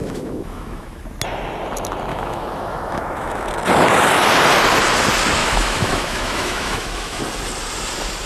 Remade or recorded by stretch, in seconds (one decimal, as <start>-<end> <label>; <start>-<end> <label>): 0.0-1.0 remade; 1.0-2.1 recorded; 2.1-3.5 remade; 3.5-5.4 recorded; 5.4-7.2 remade; 7.2-8.3 recorded